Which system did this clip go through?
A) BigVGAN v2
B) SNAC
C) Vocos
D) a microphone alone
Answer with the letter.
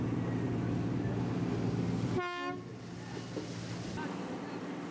D